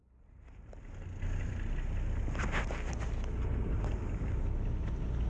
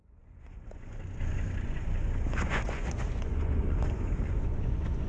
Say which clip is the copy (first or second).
second